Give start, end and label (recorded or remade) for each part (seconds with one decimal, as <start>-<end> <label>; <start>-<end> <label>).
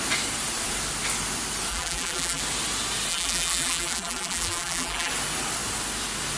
0.0-1.7 recorded; 1.7-2.4 remade; 2.4-3.1 recorded; 3.1-5.1 remade; 5.1-6.4 recorded